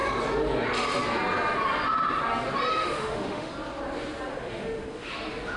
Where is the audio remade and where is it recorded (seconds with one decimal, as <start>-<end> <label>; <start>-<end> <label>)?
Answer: 0.0-2.7 recorded; 2.7-3.5 remade; 3.5-4.3 recorded; 4.3-5.1 remade; 5.1-5.6 recorded